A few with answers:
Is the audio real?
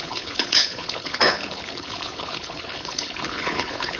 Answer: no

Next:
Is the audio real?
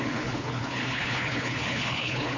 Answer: no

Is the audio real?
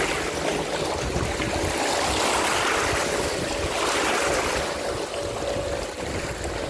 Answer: yes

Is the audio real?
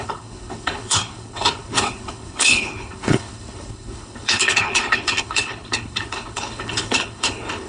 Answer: no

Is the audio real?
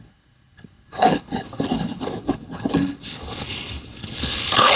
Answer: no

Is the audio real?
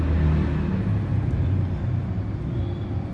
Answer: yes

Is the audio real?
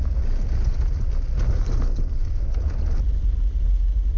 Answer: yes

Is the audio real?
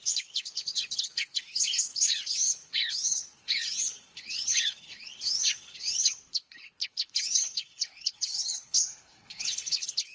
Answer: no